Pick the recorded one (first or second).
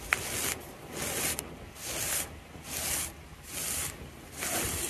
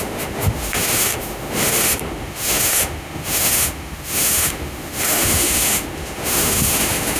first